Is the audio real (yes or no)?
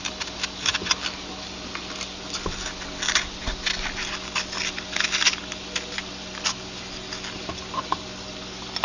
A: yes